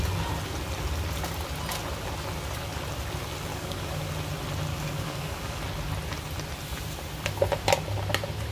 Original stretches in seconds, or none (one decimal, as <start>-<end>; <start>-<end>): 0.0-3.5; 4.1-4.7; 5.6-8.5